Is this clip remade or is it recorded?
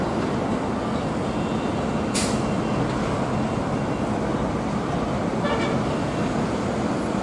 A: recorded